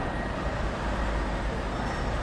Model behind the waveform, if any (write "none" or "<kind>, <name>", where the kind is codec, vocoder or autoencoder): none